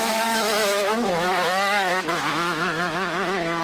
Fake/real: fake